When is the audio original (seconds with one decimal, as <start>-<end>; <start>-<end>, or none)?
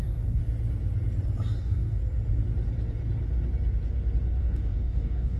0.4-1.6; 2.0-4.4